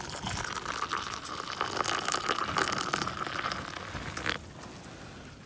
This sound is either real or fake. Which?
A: real